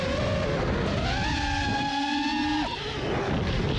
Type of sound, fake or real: real